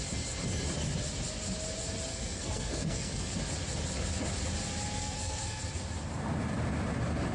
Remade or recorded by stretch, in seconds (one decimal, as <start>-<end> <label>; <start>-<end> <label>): 0.0-2.1 recorded; 2.1-3.3 remade; 3.3-5.0 recorded; 5.0-5.6 remade; 5.6-7.3 recorded